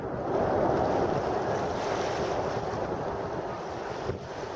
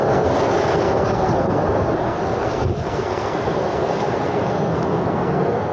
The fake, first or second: second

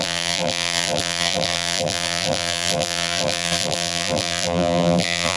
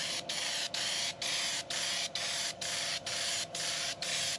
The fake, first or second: first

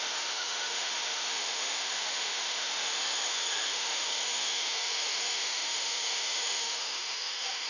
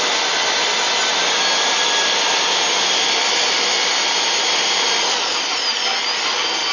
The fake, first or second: first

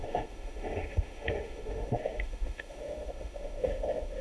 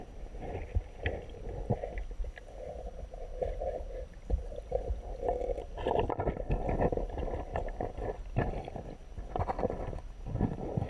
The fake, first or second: first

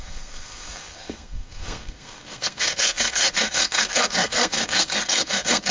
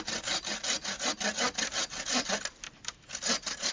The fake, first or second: first